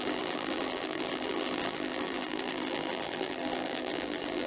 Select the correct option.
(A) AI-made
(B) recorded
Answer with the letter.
A